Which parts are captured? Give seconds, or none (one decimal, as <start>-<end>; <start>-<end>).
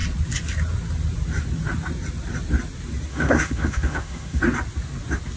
0.0-3.1; 4.4-5.4